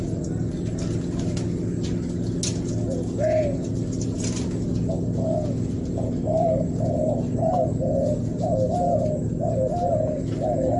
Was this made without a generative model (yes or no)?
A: yes